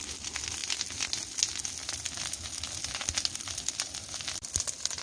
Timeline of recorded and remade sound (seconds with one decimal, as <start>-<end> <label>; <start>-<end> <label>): 0.0-5.0 recorded